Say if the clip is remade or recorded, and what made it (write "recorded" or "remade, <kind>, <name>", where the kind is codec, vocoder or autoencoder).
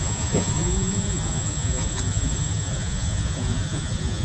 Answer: remade, vocoder, Vocos